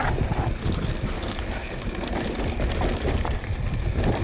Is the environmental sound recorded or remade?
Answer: recorded